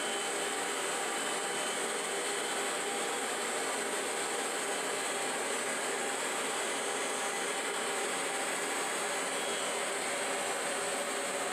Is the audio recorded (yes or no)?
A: yes